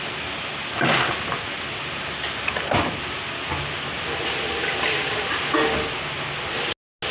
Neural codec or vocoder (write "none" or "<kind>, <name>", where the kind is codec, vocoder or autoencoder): none